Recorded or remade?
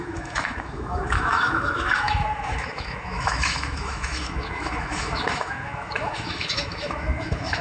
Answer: remade